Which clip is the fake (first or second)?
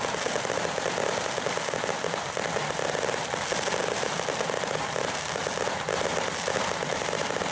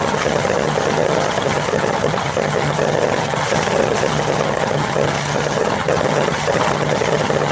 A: second